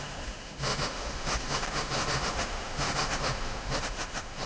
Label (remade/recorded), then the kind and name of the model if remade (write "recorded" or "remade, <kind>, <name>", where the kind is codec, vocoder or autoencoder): remade, autoencoder, DAC-VAE